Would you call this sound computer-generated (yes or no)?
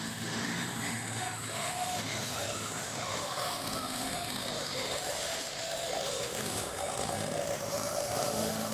yes